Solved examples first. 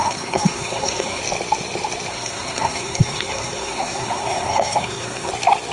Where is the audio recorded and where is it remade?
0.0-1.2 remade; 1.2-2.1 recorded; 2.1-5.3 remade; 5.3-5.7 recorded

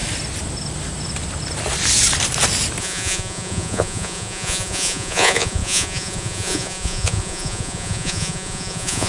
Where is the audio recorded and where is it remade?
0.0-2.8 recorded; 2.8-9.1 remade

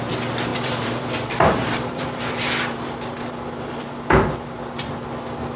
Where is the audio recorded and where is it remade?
0.0-0.5 recorded; 0.5-3.3 remade; 3.3-5.6 recorded